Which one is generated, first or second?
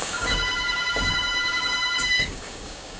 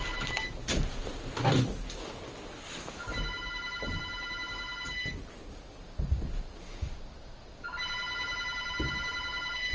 first